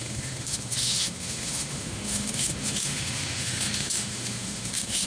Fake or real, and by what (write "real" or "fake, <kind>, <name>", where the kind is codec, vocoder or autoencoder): fake, autoencoder, DAC-VAE